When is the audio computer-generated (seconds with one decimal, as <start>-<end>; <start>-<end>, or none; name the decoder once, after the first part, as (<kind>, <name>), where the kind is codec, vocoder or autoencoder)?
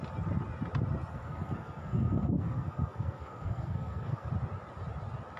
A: 1.1-4.3 (codec, SNAC)